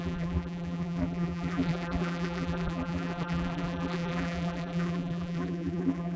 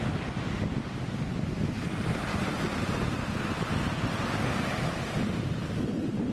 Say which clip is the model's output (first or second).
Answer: first